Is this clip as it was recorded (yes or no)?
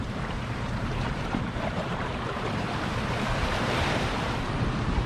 no